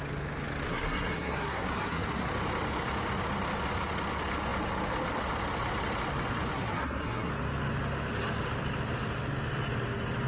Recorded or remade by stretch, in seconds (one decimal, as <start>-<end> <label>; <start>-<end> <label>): 0.0-0.7 recorded; 0.7-2.3 remade; 2.3-6.5 recorded; 6.5-7.3 remade; 7.3-10.3 recorded